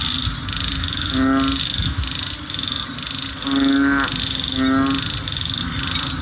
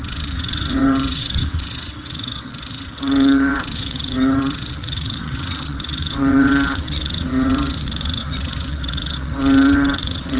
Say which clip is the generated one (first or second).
second